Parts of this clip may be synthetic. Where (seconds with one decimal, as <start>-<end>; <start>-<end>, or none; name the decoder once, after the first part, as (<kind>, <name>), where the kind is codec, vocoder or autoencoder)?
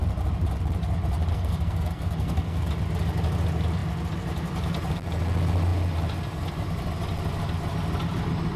1.3-2.7 (codec, SNAC)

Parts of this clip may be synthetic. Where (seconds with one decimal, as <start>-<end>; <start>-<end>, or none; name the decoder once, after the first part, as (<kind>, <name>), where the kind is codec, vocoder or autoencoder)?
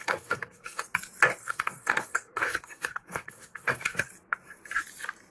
0.0-0.8 (codec, SNAC); 1.4-4.1